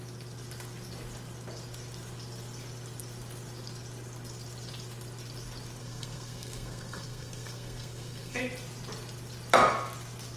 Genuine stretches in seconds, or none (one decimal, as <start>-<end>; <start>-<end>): 0.0-5.8; 8.4-10.4